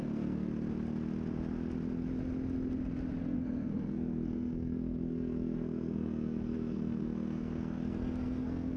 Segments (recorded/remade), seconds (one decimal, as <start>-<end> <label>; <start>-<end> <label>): 0.0-0.5 remade; 0.5-3.2 recorded; 3.2-8.8 remade